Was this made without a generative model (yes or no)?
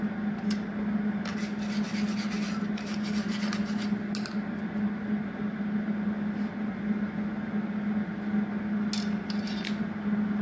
yes